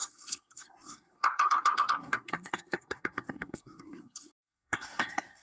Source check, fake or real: fake